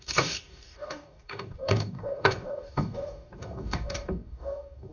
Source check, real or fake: fake